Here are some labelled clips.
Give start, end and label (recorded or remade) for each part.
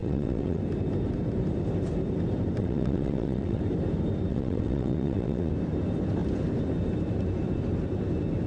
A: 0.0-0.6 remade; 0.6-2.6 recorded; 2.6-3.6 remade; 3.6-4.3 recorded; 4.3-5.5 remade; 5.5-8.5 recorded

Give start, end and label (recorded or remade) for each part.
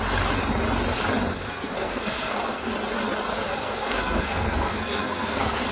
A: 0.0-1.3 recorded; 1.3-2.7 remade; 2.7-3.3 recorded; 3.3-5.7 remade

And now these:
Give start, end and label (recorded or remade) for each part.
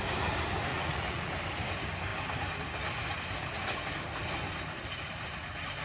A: 0.0-0.7 recorded; 0.7-1.3 remade; 1.3-5.8 recorded